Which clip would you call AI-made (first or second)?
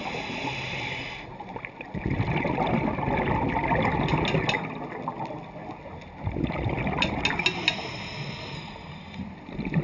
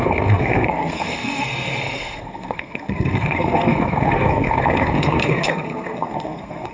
second